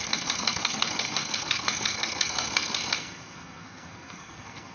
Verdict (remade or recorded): remade